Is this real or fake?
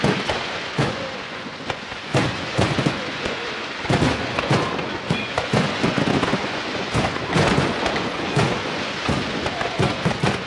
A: fake